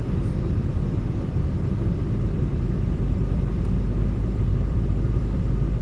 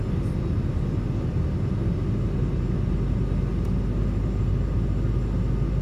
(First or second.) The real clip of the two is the second